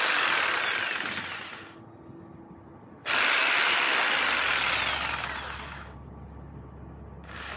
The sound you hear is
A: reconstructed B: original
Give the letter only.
B